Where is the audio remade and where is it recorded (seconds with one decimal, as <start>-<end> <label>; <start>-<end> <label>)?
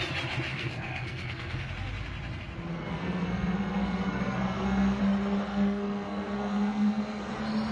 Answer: 0.0-0.5 recorded; 0.5-1.7 remade; 1.7-2.7 recorded; 2.7-5.0 remade; 5.0-5.5 recorded; 5.5-7.3 remade; 7.3-7.7 recorded